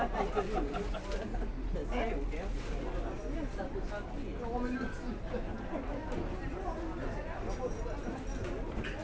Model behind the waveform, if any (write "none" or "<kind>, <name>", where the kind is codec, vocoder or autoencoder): none